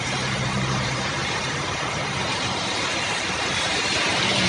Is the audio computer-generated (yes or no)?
yes